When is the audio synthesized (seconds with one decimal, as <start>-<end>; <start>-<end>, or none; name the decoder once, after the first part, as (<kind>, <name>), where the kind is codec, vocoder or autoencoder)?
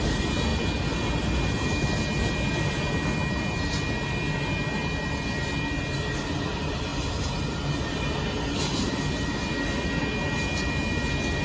none